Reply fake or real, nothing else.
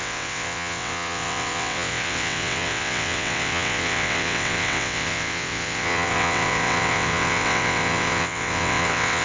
fake